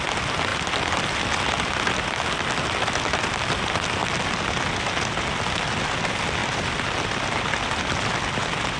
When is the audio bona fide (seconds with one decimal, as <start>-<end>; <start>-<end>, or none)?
0.0-0.5; 1.2-6.4; 8.2-8.8